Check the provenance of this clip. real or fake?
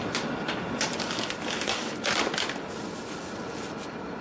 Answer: real